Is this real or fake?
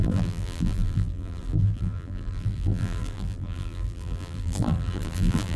fake